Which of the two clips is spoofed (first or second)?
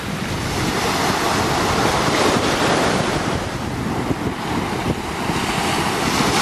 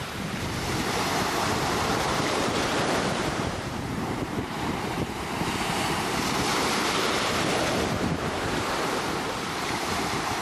second